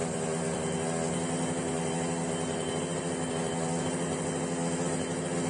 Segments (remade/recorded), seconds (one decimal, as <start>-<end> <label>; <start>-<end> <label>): 0.0-5.5 recorded